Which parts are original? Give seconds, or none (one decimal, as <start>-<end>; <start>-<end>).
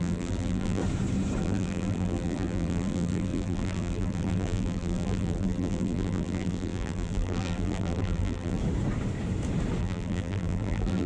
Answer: 0.8-1.4; 8.6-9.8